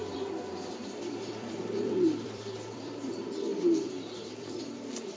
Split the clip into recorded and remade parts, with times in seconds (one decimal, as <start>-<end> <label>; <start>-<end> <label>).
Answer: 0.0-3.1 remade; 3.1-3.5 recorded; 3.5-4.6 remade; 4.6-5.2 recorded